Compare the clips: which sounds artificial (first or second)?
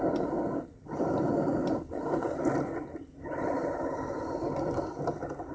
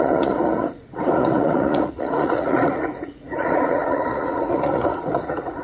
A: second